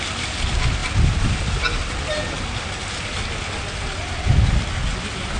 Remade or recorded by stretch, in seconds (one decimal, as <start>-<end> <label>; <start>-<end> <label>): 0.0-5.4 recorded

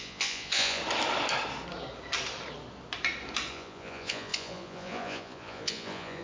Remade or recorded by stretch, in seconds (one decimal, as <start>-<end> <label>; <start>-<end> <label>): 0.0-0.8 remade; 0.8-3.5 recorded; 3.5-6.2 remade

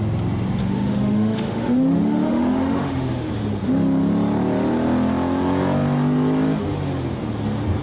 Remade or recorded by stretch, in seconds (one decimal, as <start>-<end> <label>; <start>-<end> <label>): 0.0-0.6 recorded; 0.6-3.3 remade; 3.3-7.8 recorded

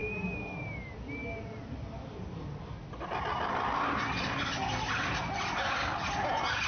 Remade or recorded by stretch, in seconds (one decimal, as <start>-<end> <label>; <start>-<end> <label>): 0.0-6.7 recorded

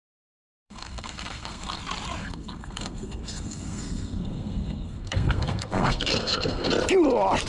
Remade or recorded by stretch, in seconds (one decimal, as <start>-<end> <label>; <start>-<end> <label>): 0.0-0.4 recorded; 0.4-1.8 remade; 1.8-2.2 recorded; 2.2-6.7 remade; 6.7-7.5 recorded

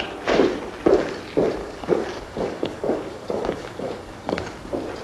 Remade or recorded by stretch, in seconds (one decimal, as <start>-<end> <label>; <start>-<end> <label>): 0.0-1.6 recorded; 1.6-4.6 remade; 4.6-5.0 recorded